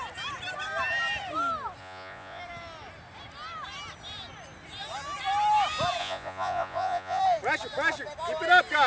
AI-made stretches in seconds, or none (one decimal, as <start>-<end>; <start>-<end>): 1.8-2.4; 6.0-7.2

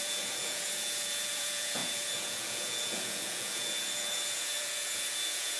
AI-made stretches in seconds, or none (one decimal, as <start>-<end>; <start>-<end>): 0.0-5.6

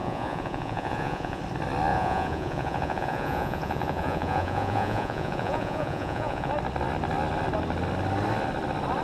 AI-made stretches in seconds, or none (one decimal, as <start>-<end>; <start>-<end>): 0.0-1.4; 1.9-6.5

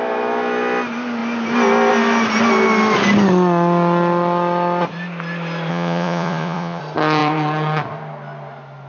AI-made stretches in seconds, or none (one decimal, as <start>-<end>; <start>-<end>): 5.7-6.8

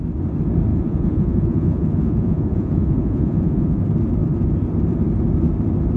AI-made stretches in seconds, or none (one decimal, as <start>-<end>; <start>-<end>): 0.7-3.8

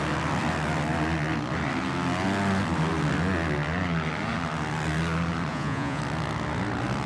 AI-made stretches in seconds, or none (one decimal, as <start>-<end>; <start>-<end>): 5.5-6.0